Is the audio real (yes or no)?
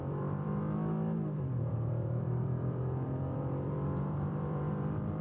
no